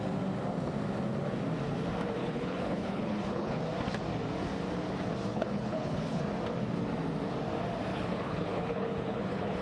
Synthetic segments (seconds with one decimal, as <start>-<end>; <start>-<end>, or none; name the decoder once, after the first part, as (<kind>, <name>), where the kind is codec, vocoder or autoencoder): 2.2-3.6 (codec, HILCodec); 5.3-6.2; 7.9-9.6